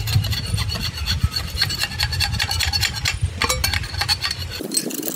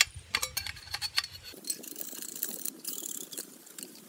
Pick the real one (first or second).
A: first